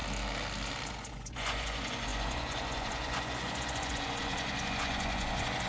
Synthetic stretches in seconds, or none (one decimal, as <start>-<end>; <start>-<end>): 0.9-5.7